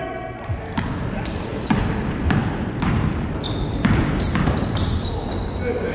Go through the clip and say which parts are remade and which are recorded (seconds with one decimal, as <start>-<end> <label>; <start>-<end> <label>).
0.0-1.5 recorded; 1.5-5.0 remade; 5.0-5.9 recorded